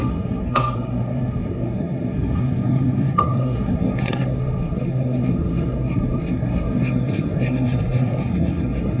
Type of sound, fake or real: fake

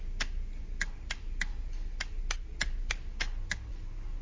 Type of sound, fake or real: real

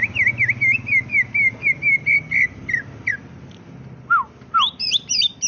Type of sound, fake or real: real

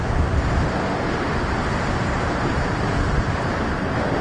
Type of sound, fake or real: real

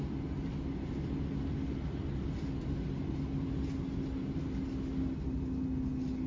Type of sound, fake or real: real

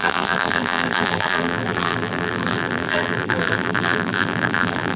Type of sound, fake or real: fake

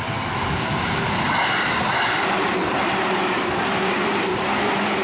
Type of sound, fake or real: fake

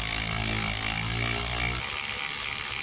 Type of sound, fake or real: real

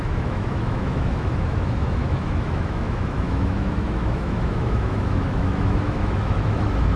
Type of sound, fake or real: fake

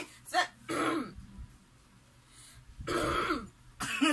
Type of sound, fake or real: real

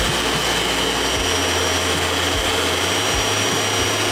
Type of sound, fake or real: real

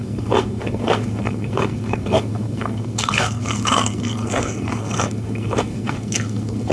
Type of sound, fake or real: fake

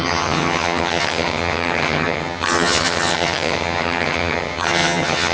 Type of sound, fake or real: fake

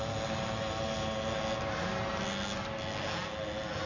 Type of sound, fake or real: real